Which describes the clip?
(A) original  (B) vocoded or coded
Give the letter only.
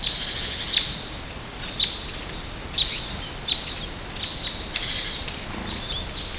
A